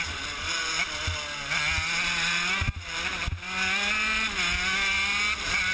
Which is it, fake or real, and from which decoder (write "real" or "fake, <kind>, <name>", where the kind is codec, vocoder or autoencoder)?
real